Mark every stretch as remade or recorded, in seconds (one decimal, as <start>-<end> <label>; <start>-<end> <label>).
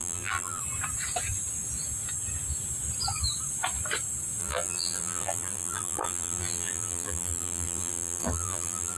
0.0-0.6 remade; 0.6-4.4 recorded; 4.4-9.0 remade